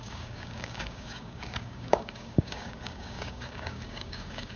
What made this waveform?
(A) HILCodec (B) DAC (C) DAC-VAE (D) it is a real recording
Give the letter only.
B